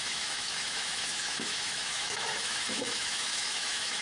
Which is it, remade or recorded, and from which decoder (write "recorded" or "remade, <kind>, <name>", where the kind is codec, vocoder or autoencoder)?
remade, autoencoder, DAC-VAE